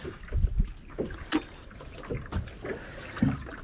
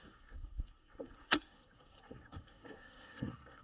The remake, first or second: second